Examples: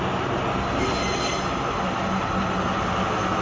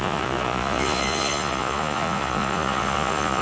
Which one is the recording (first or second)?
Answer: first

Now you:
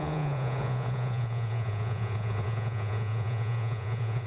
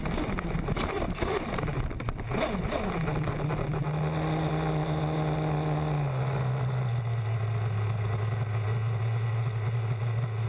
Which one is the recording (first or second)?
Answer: second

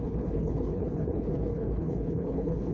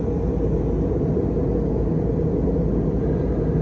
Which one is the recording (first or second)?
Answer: second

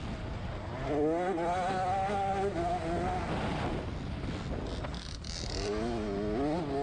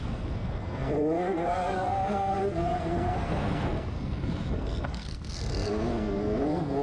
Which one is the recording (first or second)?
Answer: first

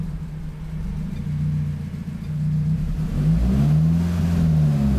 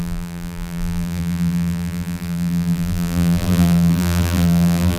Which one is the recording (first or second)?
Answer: first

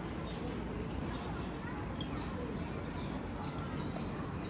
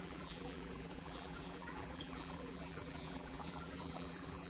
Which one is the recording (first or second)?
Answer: first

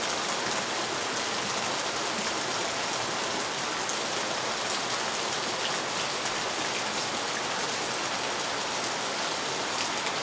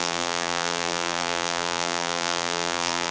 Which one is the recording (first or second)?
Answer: first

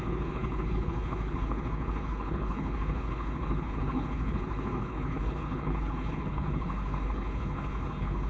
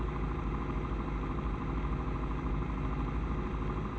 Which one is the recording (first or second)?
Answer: second